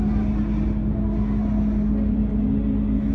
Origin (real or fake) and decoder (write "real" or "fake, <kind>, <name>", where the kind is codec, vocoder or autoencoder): real